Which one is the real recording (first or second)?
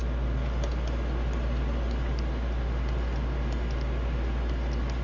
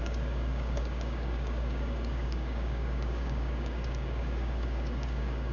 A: first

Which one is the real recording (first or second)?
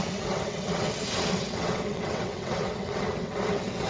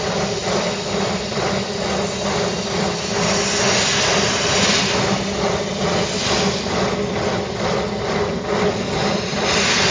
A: second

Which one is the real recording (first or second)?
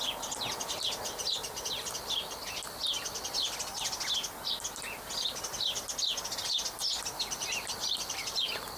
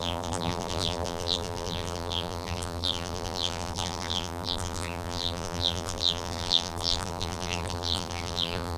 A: first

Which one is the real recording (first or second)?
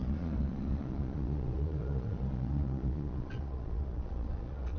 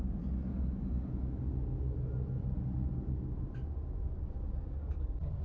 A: second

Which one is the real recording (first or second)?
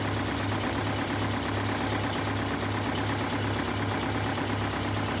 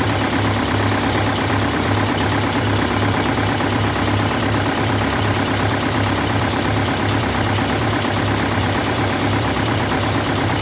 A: first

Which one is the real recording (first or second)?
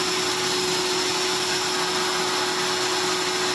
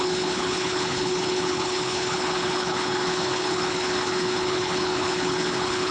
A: first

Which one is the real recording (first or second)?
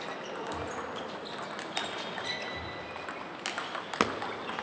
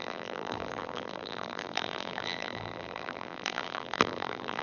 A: first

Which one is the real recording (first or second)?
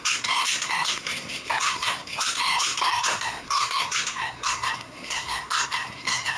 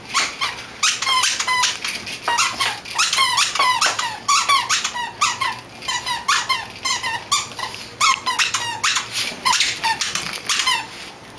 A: second